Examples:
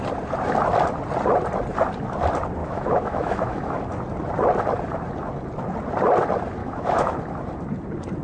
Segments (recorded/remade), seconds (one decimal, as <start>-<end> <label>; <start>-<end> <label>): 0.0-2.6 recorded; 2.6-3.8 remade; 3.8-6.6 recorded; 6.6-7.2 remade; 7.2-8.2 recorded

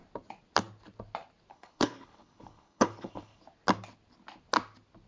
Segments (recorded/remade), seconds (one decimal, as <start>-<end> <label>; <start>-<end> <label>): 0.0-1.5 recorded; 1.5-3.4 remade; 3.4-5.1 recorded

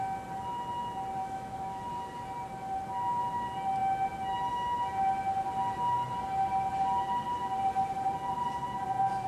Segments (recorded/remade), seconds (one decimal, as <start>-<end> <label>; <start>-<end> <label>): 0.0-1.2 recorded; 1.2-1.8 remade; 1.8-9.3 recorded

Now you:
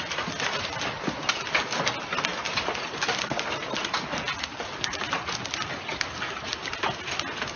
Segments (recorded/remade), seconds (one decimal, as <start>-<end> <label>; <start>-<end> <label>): 0.0-7.6 recorded

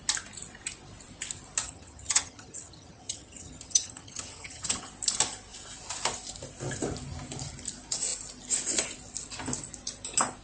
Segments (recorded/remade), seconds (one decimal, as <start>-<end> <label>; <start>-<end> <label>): 0.0-1.6 recorded; 1.6-4.9 remade; 4.9-10.4 recorded